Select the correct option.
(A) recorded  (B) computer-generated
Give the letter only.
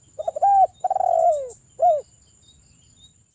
A